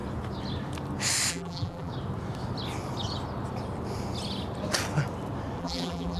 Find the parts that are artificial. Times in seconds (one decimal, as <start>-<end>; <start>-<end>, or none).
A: 1.3-1.9; 5.6-6.2